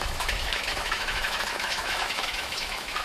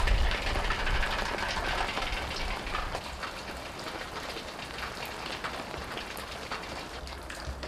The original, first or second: second